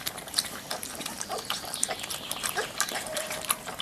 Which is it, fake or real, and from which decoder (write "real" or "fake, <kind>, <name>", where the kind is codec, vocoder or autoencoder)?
fake, vocoder, BigVGAN v2